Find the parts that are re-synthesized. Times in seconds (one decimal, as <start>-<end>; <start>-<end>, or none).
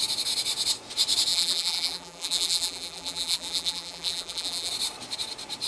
1.3-4.7